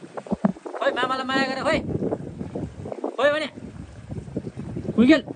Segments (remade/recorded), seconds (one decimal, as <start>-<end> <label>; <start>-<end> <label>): 0.0-0.5 remade; 0.5-3.7 recorded; 3.7-5.4 remade